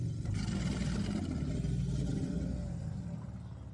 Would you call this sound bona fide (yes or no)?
yes